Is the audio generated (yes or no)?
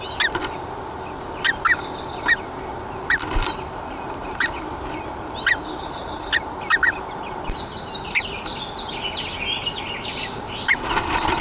no